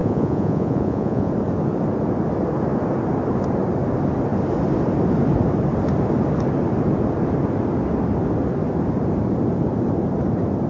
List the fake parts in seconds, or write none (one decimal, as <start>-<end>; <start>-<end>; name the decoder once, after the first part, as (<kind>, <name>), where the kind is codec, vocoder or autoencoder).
0.0-1.3 (vocoder, Vocos)